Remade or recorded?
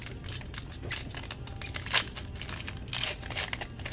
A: recorded